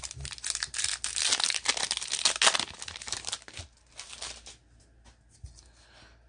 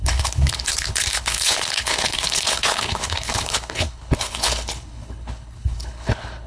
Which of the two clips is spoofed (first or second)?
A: second